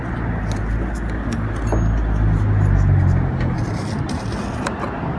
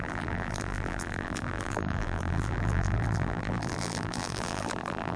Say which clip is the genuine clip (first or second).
first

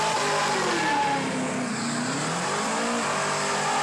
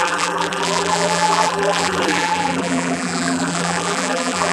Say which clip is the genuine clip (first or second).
first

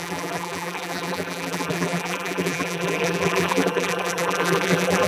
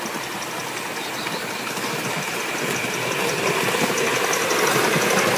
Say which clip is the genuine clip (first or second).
second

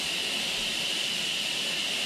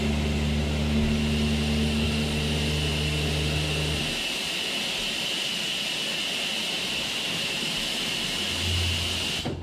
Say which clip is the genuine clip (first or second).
second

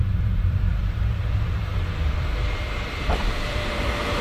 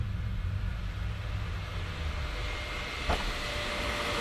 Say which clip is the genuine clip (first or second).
second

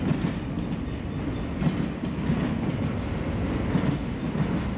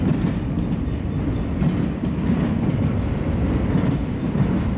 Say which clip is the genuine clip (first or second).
first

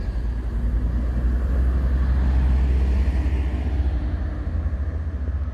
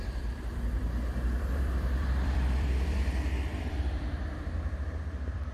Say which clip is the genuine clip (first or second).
first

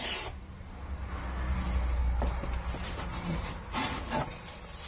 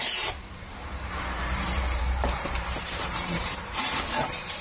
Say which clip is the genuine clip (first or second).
first